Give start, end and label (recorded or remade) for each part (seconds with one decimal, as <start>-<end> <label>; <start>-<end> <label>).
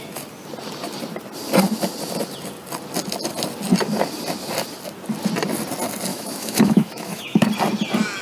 0.0-6.1 recorded; 6.1-7.5 remade; 7.5-8.2 recorded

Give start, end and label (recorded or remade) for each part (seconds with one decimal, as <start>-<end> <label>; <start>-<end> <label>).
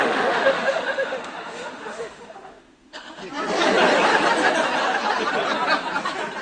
0.0-3.2 remade; 3.2-6.4 recorded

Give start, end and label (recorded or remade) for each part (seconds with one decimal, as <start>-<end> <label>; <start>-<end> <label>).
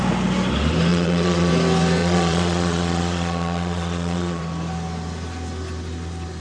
0.0-0.9 recorded; 0.9-1.5 remade; 1.5-2.0 recorded; 2.0-4.4 remade; 4.4-6.4 recorded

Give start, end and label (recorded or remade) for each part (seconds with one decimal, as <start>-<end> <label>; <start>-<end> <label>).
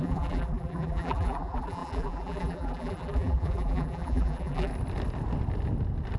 0.0-4.7 remade; 4.7-6.2 recorded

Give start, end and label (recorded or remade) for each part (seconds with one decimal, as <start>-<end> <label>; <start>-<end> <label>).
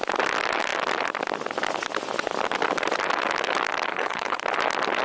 0.0-3.9 recorded; 3.9-4.4 remade; 4.4-5.0 recorded